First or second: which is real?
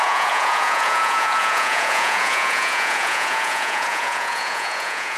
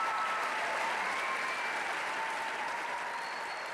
second